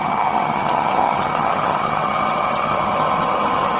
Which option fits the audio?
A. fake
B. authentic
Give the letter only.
A